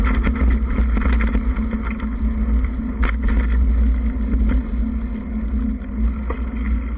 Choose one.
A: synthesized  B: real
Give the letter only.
B